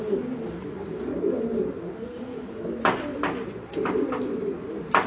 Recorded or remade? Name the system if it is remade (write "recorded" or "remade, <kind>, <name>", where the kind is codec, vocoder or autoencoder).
recorded